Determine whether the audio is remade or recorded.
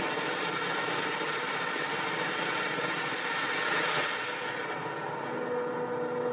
recorded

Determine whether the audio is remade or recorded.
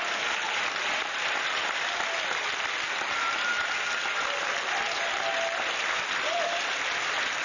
remade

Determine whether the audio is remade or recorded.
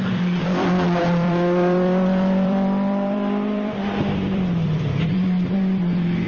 remade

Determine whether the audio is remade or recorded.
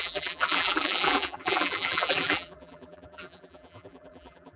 remade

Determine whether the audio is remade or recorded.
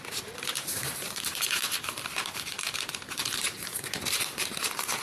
remade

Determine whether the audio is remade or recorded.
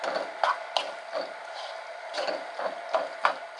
recorded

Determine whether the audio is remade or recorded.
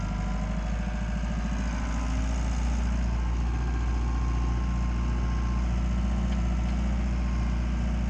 recorded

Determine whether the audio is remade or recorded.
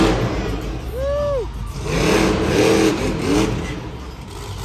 recorded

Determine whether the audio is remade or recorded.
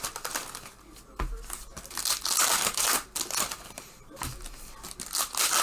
recorded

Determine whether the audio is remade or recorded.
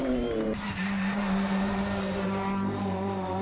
remade